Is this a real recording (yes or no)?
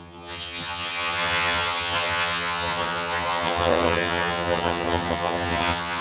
no